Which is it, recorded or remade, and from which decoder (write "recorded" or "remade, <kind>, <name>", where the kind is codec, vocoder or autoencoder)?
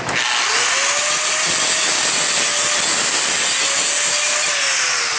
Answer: recorded